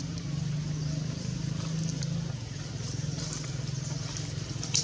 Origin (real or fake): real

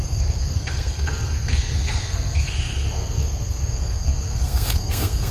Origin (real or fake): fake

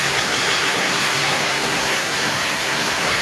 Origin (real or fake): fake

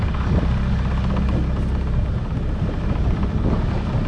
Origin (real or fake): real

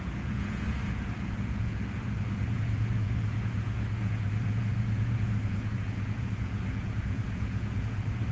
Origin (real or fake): fake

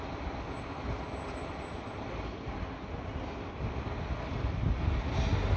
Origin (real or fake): real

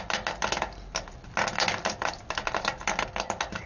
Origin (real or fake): real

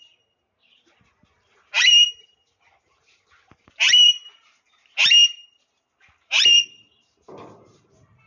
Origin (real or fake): fake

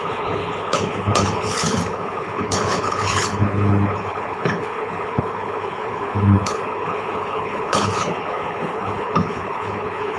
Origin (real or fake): fake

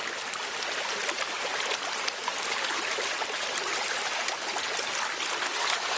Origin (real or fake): real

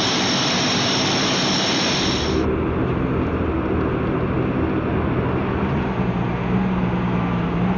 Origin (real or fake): real